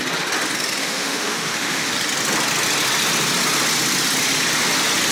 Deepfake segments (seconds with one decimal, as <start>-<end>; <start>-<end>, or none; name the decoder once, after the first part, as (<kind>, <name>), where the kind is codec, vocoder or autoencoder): 0.8-1.9 (autoencoder, DAC-VAE)